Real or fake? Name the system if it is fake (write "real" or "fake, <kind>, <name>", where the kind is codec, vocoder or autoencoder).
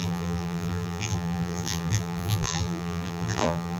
fake, vocoder, BigVGAN v2